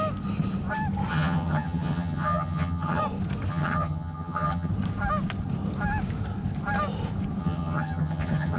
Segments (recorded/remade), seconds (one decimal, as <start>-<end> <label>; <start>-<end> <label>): 0.0-1.1 recorded; 1.1-3.0 remade; 3.0-3.5 recorded; 3.5-4.7 remade; 4.7-7.4 recorded; 7.4-8.6 remade